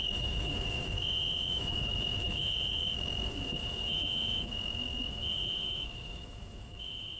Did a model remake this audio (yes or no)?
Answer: yes